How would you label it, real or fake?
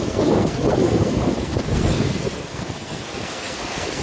fake